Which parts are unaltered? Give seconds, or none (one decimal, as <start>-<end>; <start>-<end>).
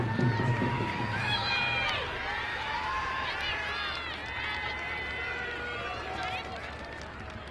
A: 0.0-0.5; 1.5-2.5; 3.3-7.5